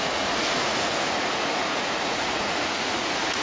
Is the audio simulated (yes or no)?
yes